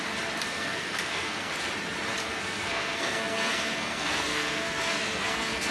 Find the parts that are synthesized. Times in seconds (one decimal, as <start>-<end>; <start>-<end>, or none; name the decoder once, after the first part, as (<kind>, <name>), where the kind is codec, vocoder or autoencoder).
0.5-1.5 (codec, SNAC); 2.2-5.7